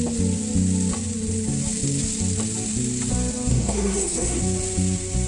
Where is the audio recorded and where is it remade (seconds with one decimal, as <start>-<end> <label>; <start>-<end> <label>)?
0.0-3.5 recorded; 3.5-4.4 remade; 4.4-5.3 recorded